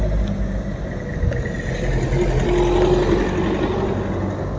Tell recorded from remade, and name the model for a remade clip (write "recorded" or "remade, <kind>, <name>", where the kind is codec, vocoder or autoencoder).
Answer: recorded